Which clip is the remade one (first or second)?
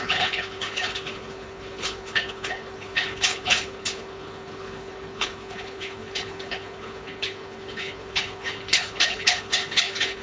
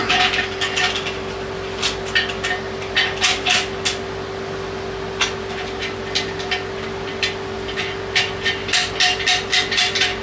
first